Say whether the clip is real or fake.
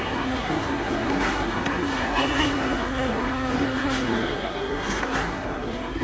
fake